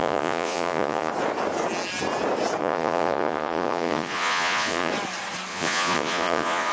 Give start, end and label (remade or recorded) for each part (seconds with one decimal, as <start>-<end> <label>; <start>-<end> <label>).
0.0-1.1 remade; 1.1-2.6 recorded; 2.6-4.9 remade; 4.9-5.5 recorded; 5.5-6.7 remade